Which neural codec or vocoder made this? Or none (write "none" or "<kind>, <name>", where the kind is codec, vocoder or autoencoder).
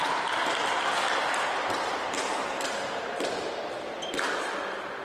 none